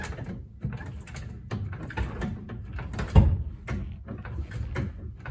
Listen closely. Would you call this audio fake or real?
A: real